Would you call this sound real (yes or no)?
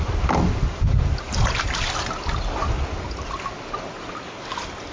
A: yes